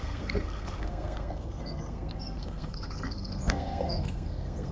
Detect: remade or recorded remade